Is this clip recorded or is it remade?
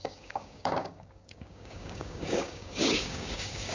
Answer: remade